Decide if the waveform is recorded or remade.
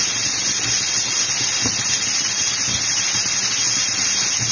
recorded